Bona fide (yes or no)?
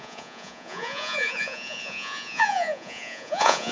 no